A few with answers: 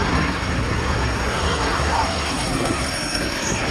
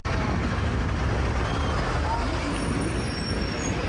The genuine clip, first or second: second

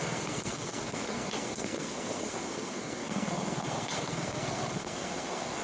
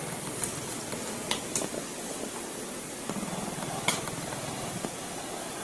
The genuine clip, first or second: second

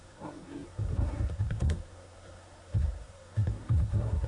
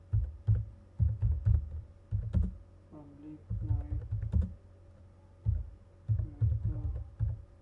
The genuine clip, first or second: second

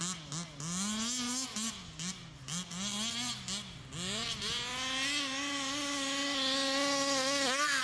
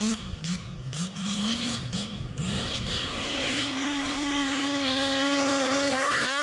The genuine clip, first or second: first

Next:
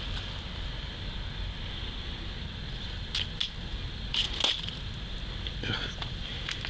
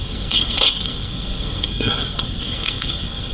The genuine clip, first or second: first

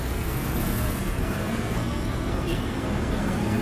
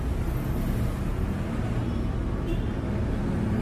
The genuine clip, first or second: second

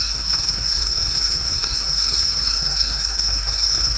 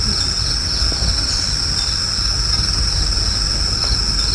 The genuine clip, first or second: second